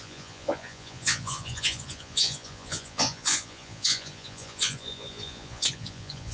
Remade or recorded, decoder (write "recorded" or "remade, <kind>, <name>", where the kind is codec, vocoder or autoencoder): remade, vocoder, Vocos